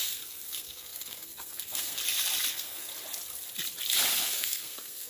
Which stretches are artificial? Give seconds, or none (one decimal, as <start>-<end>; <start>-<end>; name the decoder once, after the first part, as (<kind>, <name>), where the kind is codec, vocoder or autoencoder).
0.0-2.0 (codec, SNAC); 2.5-2.9; 4.2-5.1